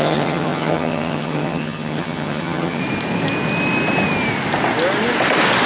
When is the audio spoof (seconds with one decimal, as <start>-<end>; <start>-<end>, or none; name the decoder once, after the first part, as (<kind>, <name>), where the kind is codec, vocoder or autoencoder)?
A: 0.0-2.8 (vocoder, HiFi-GAN)